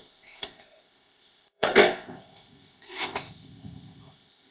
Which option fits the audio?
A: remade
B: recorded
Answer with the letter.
A